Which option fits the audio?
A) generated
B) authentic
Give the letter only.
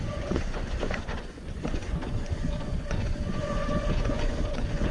A